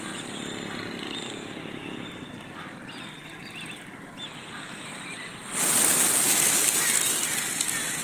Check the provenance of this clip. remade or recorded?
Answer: recorded